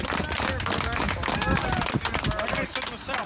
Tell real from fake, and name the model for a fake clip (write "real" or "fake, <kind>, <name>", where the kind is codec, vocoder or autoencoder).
real